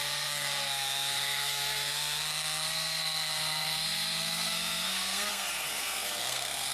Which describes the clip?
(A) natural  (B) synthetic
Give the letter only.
B